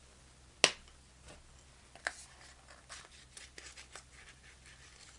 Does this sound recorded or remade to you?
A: recorded